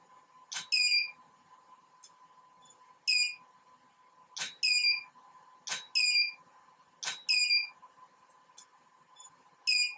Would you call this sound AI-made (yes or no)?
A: no